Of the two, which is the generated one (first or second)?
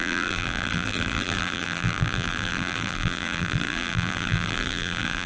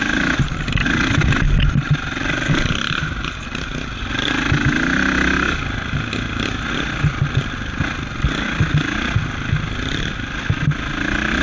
first